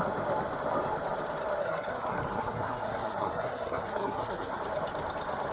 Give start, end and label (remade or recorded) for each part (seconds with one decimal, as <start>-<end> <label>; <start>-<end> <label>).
0.0-1.6 recorded; 1.6-4.6 remade; 4.6-5.5 recorded